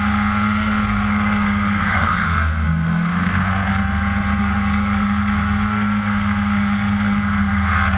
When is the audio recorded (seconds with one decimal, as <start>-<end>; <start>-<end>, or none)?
3.7-4.4